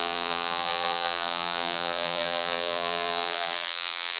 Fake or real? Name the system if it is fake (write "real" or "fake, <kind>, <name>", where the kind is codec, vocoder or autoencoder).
fake, vocoder, BigVGAN v2